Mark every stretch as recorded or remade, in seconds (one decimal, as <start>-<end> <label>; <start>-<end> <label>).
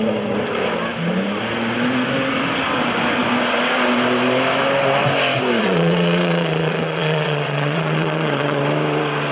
0.0-5.6 recorded; 5.6-8.6 remade; 8.6-9.3 recorded